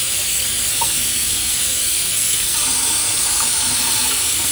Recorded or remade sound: remade